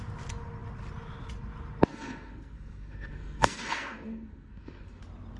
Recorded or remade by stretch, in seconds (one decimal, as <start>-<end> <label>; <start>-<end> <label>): 0.0-1.9 recorded; 1.9-5.0 remade; 5.0-5.4 recorded